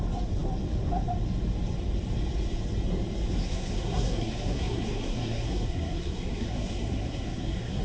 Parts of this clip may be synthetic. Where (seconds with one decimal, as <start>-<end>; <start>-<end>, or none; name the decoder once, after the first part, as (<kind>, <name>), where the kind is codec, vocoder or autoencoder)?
3.4-7.8 (codec, SNAC)